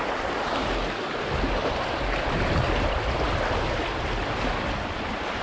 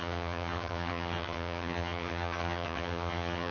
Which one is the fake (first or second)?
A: second